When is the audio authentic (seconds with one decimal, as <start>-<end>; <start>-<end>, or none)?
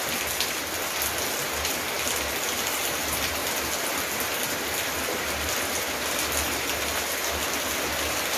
0.0-8.4